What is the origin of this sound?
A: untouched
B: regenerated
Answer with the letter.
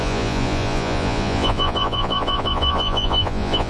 B